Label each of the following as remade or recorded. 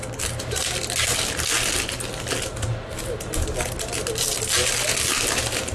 recorded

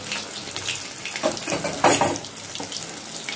recorded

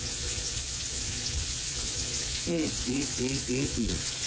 remade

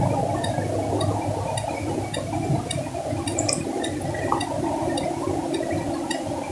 recorded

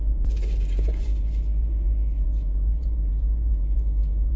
remade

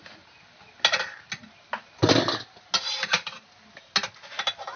recorded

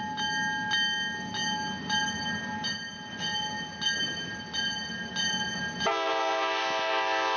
recorded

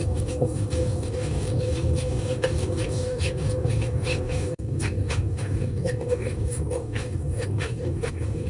remade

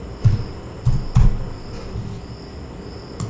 recorded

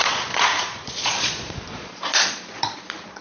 remade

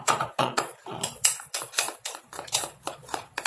remade